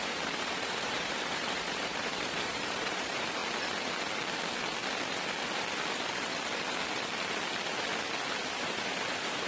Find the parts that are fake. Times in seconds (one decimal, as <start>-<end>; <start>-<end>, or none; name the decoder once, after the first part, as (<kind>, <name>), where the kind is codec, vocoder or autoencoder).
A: 0.0-3.4 (vocoder, BigVGAN v2); 8.5-9.5